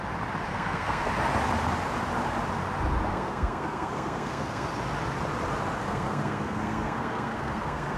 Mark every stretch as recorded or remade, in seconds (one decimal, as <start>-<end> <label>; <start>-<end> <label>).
0.0-0.5 recorded; 0.5-1.1 remade; 1.1-3.1 recorded; 3.1-4.7 remade; 4.7-5.8 recorded; 5.8-8.0 remade